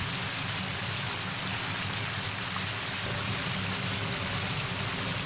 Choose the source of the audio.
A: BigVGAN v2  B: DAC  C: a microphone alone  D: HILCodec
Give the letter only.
C